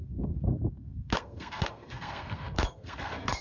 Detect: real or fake fake